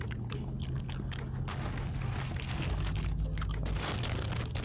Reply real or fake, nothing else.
real